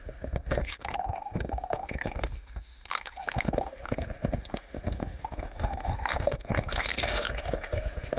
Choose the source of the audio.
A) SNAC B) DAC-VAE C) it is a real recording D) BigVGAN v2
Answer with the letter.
B